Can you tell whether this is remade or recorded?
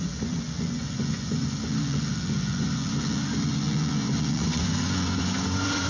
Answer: remade